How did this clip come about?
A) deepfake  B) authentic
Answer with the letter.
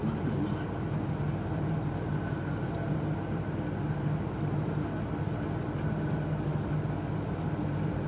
B